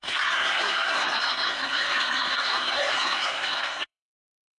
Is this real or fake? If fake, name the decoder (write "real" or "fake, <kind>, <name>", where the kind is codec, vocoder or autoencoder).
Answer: fake, codec, SNAC